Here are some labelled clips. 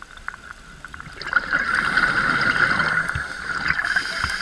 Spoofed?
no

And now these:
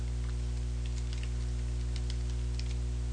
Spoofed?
no